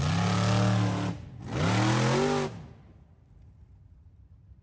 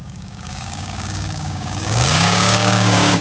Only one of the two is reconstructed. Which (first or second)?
second